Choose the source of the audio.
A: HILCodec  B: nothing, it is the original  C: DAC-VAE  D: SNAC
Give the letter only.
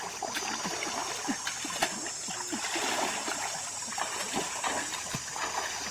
B